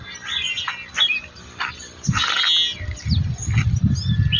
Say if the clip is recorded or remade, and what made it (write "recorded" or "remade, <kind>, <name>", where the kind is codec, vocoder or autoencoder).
recorded